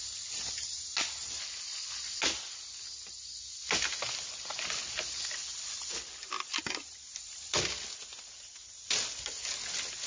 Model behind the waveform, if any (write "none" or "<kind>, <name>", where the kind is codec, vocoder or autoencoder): none